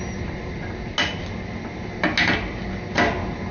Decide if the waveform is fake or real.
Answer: real